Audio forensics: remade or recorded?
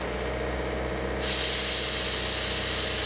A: recorded